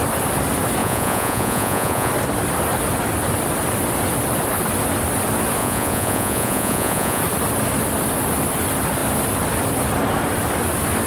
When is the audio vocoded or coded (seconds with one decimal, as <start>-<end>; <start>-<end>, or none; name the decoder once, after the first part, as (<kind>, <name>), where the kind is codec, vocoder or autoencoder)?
0.8-2.1 (vocoder, Vocos); 5.6-7.2